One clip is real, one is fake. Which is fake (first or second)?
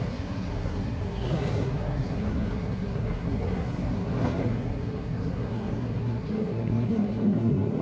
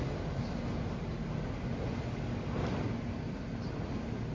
first